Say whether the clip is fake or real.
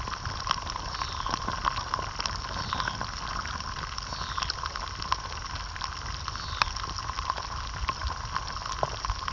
real